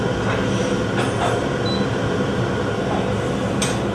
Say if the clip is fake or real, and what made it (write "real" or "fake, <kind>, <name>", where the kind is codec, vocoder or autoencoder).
real